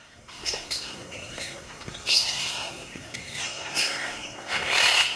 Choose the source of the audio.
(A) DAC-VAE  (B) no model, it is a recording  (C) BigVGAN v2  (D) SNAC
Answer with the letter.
D